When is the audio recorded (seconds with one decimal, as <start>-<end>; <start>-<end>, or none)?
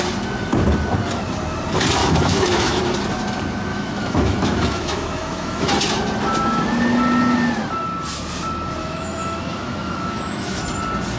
0.0-2.0; 2.8-3.7; 5.7-8.8; 10.6-11.2